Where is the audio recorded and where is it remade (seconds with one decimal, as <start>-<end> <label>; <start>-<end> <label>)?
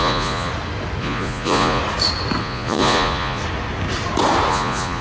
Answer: 0.0-0.5 remade; 0.5-1.0 recorded; 1.0-1.8 remade; 1.8-2.4 recorded; 2.4-3.4 remade; 3.4-4.5 recorded; 4.5-5.0 remade